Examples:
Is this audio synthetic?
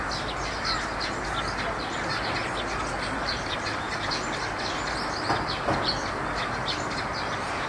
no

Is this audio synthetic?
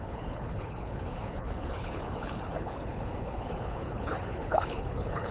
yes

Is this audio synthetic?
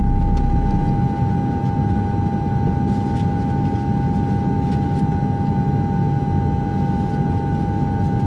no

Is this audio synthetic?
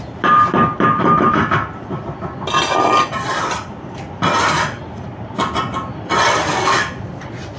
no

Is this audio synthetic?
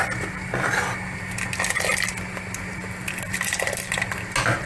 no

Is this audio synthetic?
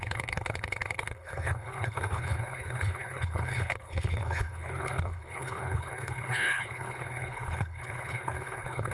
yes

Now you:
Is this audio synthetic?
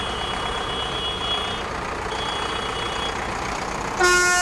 no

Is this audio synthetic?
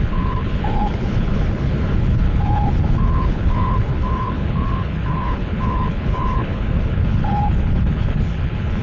yes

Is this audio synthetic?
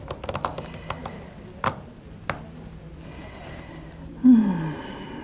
no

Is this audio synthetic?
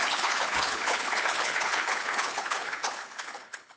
yes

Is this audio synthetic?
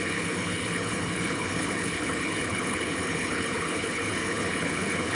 yes